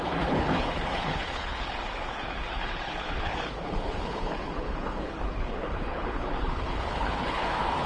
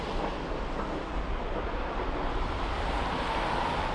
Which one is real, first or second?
second